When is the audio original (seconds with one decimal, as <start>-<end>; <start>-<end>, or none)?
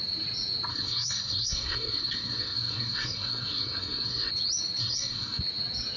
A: 0.0-0.7; 4.3-4.8; 5.4-6.0